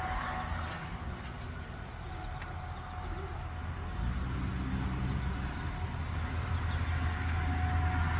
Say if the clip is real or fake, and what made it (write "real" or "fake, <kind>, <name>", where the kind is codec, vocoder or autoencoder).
real